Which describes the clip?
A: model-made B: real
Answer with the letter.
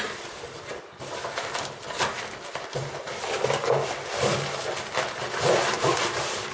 B